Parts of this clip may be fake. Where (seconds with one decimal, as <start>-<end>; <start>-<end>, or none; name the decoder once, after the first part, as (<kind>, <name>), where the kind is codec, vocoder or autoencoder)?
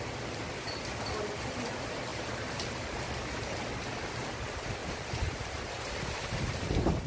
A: 2.1-3.1 (vocoder, BigVGAN v2); 4.8-6.6